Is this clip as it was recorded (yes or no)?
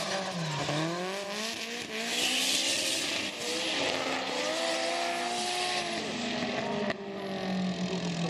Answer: yes